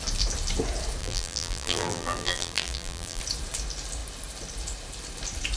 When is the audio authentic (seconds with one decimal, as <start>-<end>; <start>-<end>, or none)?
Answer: 0.0-1.0; 3.2-5.6